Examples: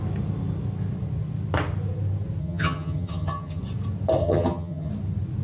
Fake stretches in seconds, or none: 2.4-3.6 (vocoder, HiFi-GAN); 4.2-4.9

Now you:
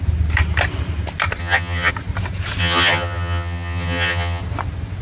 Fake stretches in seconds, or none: 1.4-1.9 (vocoder, HiFi-GAN); 2.6-4.4

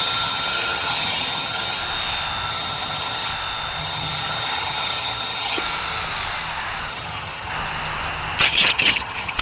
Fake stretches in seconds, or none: 0.0-1.8 (vocoder, HiFi-GAN); 2.5-3.3; 3.8-5.6; 6.9-7.5; 8.4-9.4

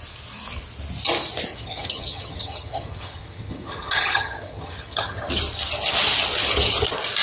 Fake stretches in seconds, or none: 1.5-5.3 (vocoder, HiFi-GAN)

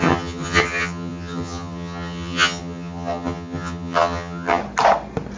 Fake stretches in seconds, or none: 0.0-4.6 (vocoder, HiFi-GAN)

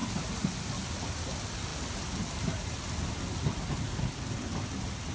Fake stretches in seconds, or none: none

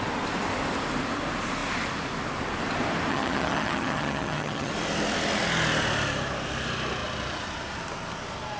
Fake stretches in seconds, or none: 3.1-4.7 (vocoder, HiFi-GAN)